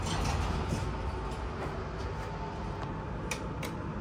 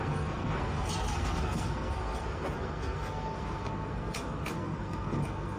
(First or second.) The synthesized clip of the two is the second